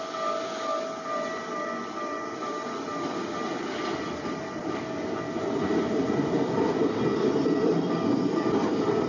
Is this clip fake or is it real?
fake